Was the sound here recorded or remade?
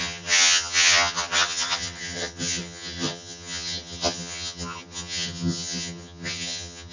remade